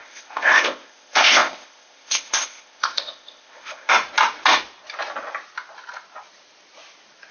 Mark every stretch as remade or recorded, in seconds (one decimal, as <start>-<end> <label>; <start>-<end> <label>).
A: 0.0-3.9 remade; 3.9-7.3 recorded